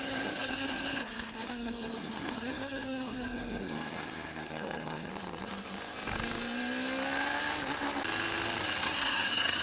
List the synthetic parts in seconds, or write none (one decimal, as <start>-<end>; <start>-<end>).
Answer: 0.0-5.1; 8.8-9.6